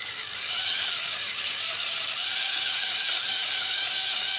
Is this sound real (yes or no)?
no